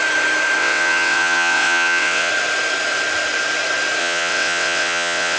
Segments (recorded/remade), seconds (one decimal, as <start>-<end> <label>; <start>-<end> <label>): 0.0-0.6 recorded; 0.6-2.3 remade; 2.3-4.0 recorded; 4.0-5.4 remade